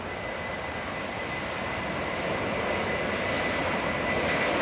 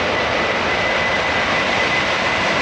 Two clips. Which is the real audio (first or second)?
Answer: first